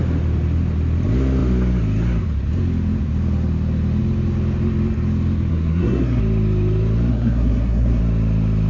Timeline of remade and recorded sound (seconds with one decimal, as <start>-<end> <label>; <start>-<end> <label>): 0.0-5.5 recorded; 5.5-6.2 remade; 6.2-7.1 recorded; 7.1-8.0 remade; 8.0-8.7 recorded